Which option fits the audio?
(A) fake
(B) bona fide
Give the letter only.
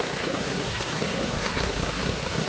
A